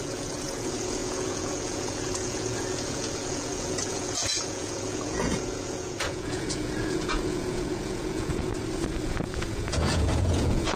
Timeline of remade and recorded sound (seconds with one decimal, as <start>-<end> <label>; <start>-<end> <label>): 0.0-8.5 remade; 8.5-9.0 recorded; 9.0-10.8 remade